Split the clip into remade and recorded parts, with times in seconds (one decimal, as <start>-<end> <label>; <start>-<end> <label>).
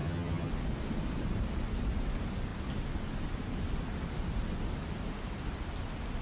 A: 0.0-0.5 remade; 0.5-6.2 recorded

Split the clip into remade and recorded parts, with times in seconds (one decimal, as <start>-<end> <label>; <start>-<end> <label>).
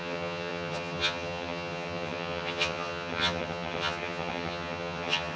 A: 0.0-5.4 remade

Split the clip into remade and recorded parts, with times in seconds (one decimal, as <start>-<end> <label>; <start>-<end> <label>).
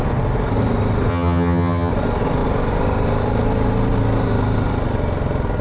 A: 0.0-1.1 recorded; 1.1-1.9 remade; 1.9-5.6 recorded